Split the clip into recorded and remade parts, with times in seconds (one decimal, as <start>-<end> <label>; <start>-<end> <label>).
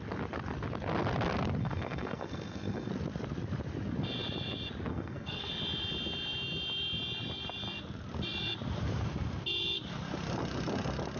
0.0-1.6 recorded; 1.6-2.9 remade; 2.9-4.9 recorded; 4.9-5.5 remade; 5.5-11.2 recorded